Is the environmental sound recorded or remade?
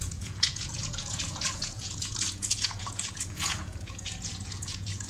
remade